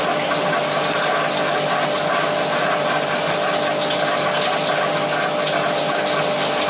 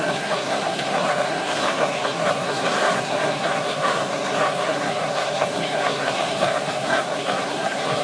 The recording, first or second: first